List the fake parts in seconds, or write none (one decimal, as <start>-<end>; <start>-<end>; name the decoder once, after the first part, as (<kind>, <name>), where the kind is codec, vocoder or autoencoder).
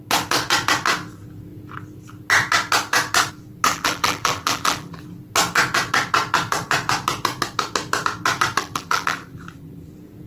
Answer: 3.7-5.0 (vocoder, BigVGAN v2); 8.6-9.9